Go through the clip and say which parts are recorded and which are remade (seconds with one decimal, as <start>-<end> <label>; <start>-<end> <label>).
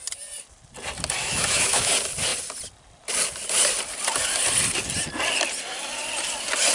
0.0-1.2 recorded; 1.2-1.9 remade; 1.9-6.7 recorded